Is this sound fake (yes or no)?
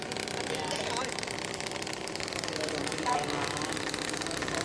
no